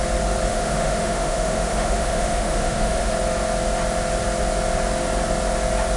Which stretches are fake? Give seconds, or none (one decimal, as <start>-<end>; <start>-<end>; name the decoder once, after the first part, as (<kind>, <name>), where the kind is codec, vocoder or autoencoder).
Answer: 0.5-3.1 (autoencoder, DAC-VAE)